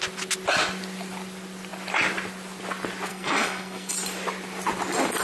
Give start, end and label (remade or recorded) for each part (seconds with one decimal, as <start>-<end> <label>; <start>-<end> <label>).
0.0-3.1 recorded; 3.1-3.9 remade; 3.9-5.2 recorded